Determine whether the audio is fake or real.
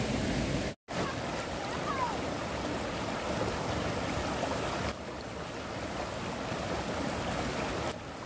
real